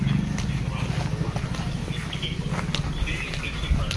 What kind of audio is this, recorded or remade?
recorded